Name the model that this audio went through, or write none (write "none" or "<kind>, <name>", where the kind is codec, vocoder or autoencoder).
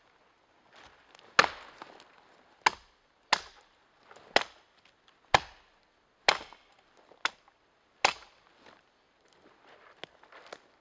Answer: none